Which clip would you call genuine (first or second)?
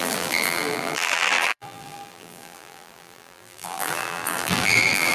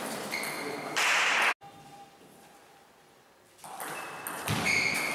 second